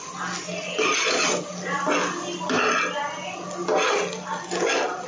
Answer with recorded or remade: recorded